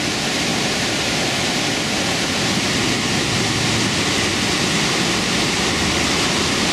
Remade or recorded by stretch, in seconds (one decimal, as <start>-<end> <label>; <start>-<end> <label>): 0.0-0.5 recorded; 0.5-1.3 remade; 1.3-6.7 recorded